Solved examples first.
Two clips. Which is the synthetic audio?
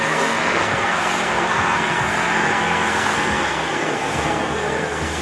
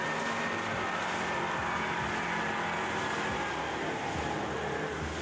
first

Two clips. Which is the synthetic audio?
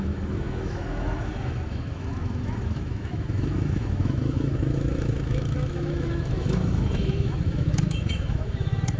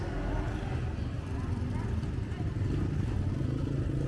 first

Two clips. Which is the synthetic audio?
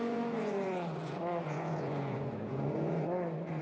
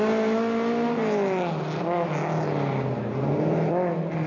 first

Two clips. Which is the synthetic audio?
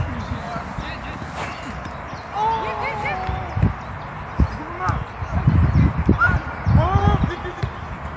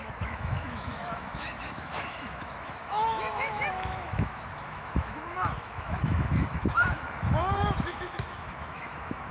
second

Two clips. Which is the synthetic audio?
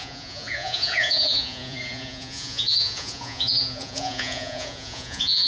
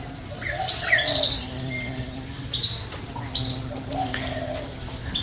first